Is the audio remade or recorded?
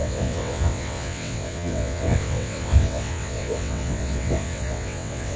remade